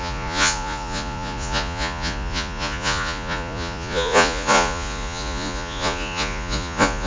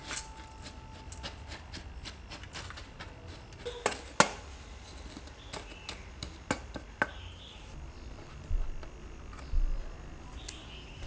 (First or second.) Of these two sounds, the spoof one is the first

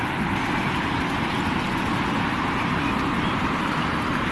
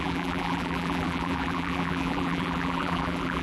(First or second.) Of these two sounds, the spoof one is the second